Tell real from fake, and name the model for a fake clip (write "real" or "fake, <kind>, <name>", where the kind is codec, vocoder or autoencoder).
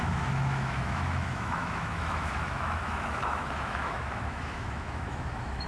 fake, autoencoder, DAC-VAE